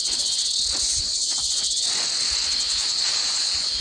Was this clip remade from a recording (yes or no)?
yes